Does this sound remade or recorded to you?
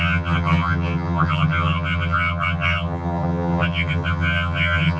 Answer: remade